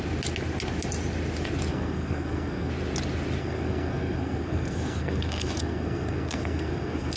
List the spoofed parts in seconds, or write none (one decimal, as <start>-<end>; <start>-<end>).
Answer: 1.7-2.7; 3.4-7.2